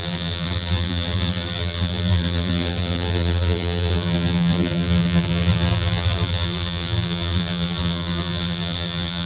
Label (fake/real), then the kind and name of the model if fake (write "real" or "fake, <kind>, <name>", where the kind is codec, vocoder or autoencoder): fake, vocoder, BigVGAN v2